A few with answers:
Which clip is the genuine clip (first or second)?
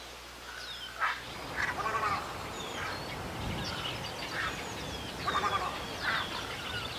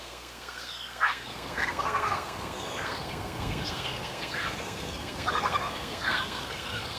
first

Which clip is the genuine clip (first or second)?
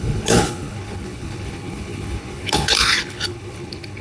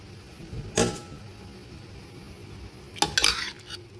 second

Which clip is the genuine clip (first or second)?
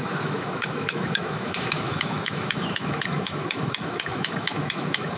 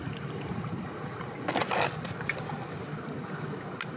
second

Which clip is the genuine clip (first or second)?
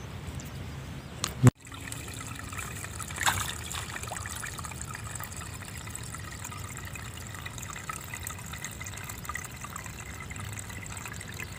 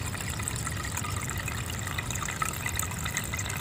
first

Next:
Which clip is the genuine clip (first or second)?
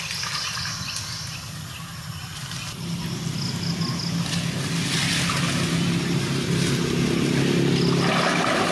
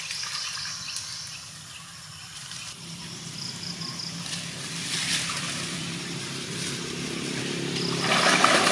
first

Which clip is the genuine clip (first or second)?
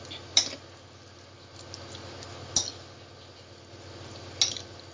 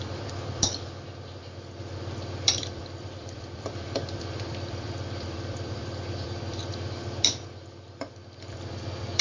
first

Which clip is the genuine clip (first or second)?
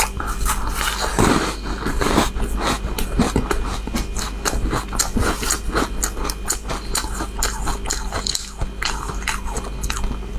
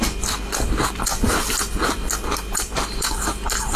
first